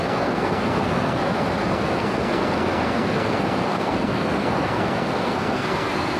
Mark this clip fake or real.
fake